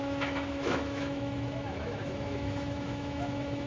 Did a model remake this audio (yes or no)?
yes